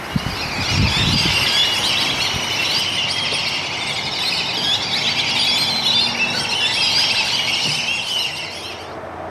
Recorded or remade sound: recorded